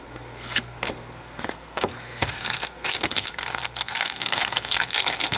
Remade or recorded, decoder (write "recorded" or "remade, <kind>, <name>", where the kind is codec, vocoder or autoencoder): remade, codec, SNAC